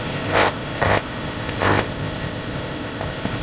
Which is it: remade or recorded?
remade